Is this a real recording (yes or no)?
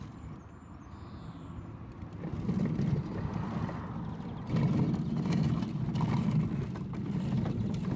yes